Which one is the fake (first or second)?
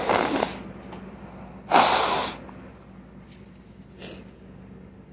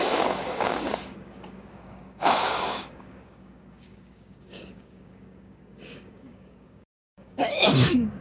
second